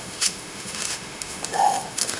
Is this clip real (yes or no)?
no